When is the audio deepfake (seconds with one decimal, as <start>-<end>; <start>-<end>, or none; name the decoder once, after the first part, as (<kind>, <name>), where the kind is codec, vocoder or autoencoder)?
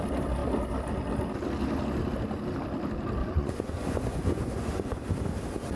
3.2-5.0 (vocoder, Vocos)